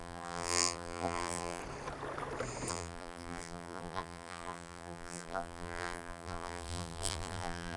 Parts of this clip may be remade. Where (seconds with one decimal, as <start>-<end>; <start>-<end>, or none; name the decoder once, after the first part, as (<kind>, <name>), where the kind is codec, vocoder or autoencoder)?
0.0-1.6 (vocoder, BigVGAN v2); 2.7-7.8